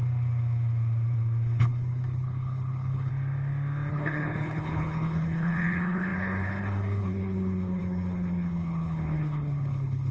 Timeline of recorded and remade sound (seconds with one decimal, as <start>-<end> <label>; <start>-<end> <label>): 0.0-1.6 recorded; 1.6-3.1 remade; 3.1-3.9 recorded; 3.9-10.1 remade